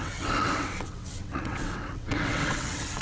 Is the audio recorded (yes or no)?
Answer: no